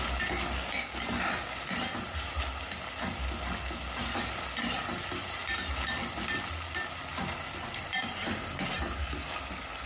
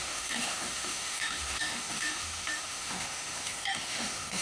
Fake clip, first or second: second